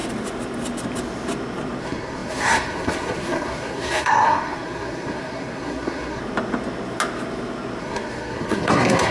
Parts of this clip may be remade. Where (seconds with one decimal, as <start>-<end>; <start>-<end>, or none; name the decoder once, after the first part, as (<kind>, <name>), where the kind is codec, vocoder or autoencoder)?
1.8-6.2 (codec, SNAC); 7.8-9.1